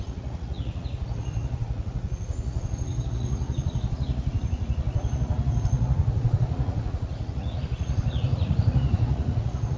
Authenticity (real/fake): fake